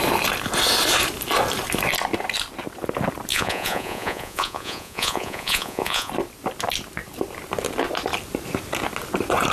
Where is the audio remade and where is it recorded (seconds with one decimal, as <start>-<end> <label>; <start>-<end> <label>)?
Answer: 0.0-3.3 recorded; 3.3-6.1 remade; 6.1-9.5 recorded